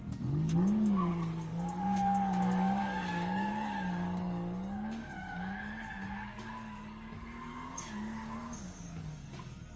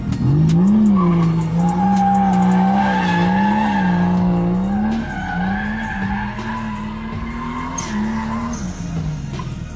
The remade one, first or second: first